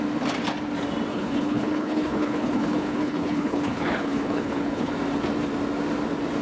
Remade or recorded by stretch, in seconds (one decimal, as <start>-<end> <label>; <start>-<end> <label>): 0.0-1.1 recorded; 1.1-4.9 remade; 4.9-6.4 recorded